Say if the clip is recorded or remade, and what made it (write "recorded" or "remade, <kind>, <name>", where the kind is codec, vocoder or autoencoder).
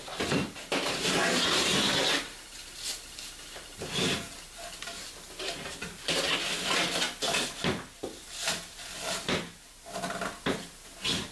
recorded